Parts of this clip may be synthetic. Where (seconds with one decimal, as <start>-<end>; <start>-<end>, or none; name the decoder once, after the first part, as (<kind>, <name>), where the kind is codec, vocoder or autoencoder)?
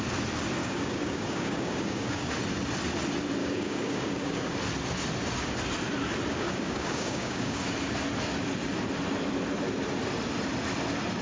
0.6-2.3 (codec, DAC); 3.4-4.5; 6.3-7.6